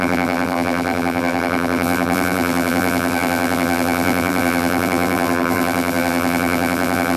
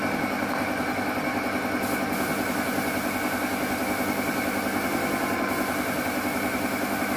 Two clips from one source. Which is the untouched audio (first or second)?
second